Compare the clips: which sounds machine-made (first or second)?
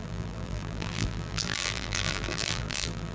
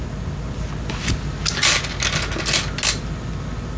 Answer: first